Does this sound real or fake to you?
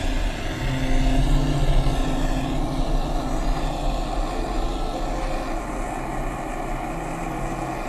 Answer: real